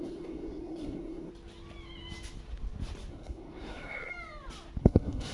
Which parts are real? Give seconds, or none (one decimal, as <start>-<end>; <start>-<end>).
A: 1.3-3.1; 4.1-4.8